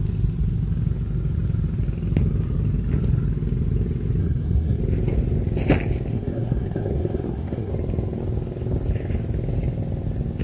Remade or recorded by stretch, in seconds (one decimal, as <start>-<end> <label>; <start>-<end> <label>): 0.0-4.2 recorded; 4.2-4.8 remade; 4.8-6.1 recorded; 6.1-7.7 remade; 7.7-10.4 recorded